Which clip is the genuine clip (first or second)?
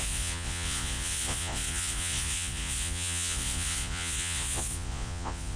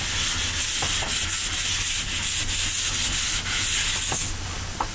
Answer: second